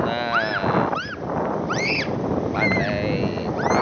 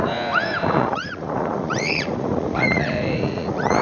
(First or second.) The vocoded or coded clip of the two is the second